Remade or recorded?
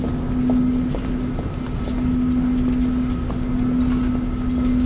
recorded